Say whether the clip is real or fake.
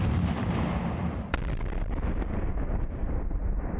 fake